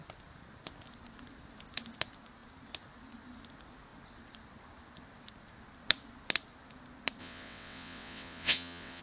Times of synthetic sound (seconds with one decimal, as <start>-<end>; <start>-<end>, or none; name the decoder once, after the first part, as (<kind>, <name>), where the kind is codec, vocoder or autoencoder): 7.2-9.0 (vocoder, WaveNeXt)